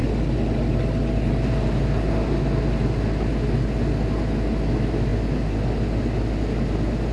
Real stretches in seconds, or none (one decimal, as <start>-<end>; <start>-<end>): 0.0-7.1